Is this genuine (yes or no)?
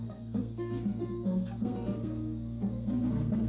no